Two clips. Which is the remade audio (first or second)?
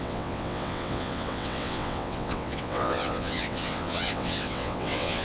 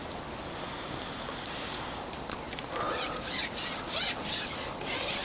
first